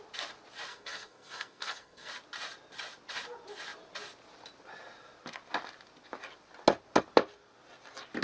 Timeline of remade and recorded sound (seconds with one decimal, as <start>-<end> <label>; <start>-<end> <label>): 0.0-0.7 recorded; 0.7-2.1 remade; 2.1-8.2 recorded